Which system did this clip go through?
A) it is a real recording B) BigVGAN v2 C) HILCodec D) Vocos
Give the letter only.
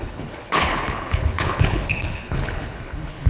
C